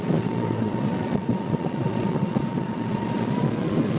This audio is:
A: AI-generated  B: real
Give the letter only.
A